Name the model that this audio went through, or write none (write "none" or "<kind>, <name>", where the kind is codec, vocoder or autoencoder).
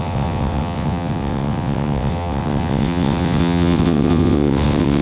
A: vocoder, WaveNeXt